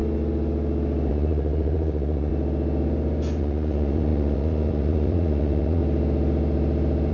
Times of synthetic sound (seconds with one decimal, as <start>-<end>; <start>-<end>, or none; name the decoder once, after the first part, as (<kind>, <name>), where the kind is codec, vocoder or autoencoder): 1.1-2.3 (vocoder, Vocos); 3.4-5.8